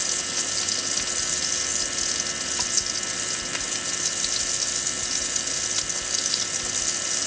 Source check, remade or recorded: recorded